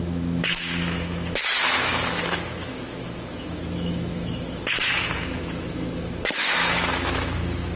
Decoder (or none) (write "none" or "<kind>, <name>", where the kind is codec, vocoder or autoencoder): autoencoder, DAC-VAE